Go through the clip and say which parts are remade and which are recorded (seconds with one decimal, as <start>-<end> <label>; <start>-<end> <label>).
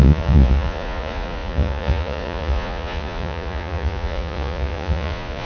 0.0-5.5 remade